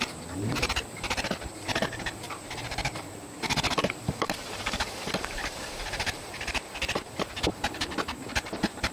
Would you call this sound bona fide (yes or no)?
no